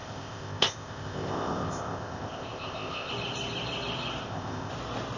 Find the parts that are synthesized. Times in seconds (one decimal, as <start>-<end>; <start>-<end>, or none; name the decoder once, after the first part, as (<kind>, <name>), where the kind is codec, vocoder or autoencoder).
0.0-3.1 (codec, ZipCodec); 4.2-4.7